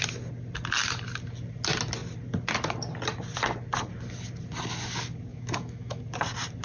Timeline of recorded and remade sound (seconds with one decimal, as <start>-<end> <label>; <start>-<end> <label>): 0.0-5.3 recorded; 5.3-6.0 remade; 6.0-6.6 recorded